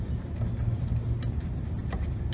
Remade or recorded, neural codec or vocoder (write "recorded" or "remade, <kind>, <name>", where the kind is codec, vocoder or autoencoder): remade, vocoder, BigVGAN v2